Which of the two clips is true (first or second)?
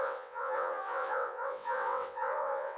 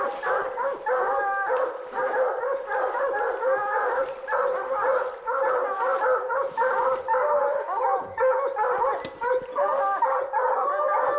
second